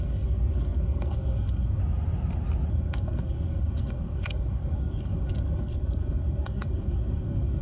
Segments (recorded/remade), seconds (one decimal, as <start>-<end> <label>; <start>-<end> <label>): 0.0-1.8 remade; 1.8-2.7 recorded; 2.7-7.6 remade